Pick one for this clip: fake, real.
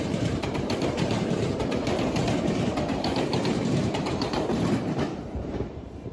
fake